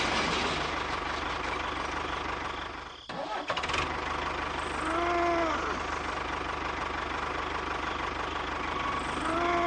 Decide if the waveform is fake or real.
real